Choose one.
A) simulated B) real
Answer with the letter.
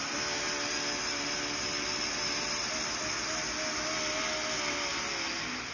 B